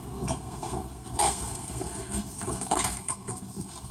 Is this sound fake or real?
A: fake